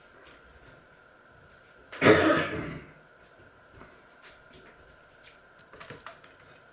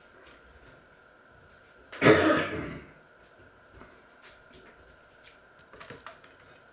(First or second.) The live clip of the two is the second